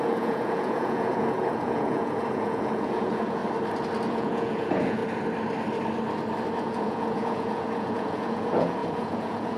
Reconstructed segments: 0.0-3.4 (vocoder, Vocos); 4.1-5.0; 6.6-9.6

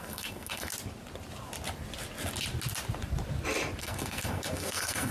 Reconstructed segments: 0.0-0.7 (codec, SNAC); 3.8-5.1

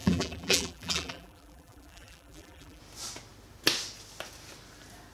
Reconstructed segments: 0.0-2.8 (vocoder, BigVGAN v2)

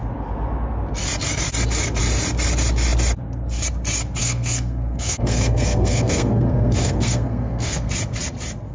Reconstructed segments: 4.2-7.9 (codec, SNAC)

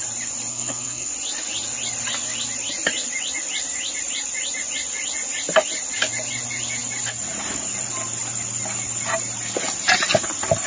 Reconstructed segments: 0.5-1.1 (codec, SNAC)